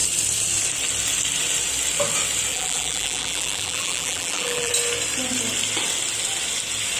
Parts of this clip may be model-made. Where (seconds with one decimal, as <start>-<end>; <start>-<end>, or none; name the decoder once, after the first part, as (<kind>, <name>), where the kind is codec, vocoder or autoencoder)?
2.5-4.7 (vocoder, BigVGAN v2)